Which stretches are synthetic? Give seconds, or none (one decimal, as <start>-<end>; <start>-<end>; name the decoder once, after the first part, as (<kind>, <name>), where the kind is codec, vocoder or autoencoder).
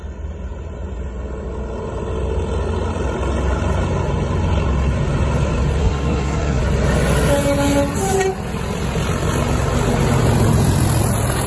5.8-6.6 (codec, SNAC)